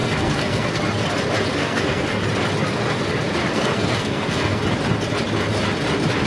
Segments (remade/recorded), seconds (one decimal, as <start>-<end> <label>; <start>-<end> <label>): 0.0-0.8 remade; 0.8-1.6 recorded; 1.6-2.2 remade; 2.2-3.4 recorded; 3.4-4.6 remade; 4.6-6.3 recorded